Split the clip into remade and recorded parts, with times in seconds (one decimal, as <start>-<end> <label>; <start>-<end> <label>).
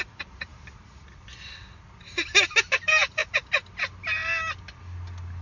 0.0-5.4 recorded